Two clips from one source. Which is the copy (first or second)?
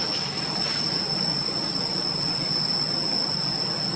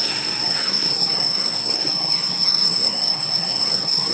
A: second